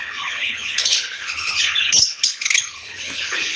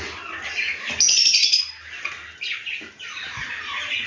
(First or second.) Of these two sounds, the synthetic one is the first